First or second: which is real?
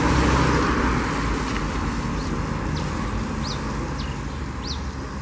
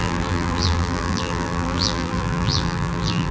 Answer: first